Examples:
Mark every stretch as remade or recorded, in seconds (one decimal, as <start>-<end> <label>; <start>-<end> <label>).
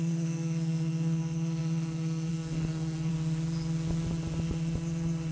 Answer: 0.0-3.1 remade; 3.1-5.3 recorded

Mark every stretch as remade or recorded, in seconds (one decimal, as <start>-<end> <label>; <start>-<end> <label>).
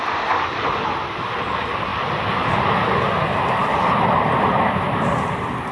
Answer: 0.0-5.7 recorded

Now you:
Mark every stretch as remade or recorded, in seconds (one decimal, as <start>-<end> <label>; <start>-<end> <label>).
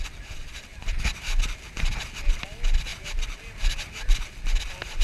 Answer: 0.0-5.0 recorded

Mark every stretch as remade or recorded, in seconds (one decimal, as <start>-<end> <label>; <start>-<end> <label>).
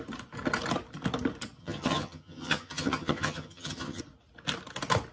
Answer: 0.0-1.6 recorded; 1.6-4.0 remade; 4.0-5.1 recorded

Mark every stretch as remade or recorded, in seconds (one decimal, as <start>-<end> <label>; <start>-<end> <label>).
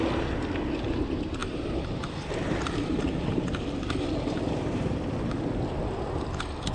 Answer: 0.0-1.4 recorded; 1.4-5.4 remade; 5.4-6.7 recorded